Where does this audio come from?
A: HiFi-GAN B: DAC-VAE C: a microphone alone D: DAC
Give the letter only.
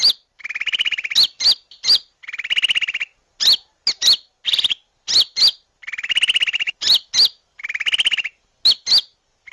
C